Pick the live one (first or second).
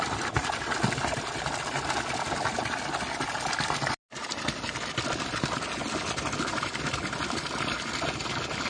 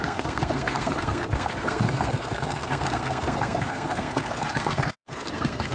first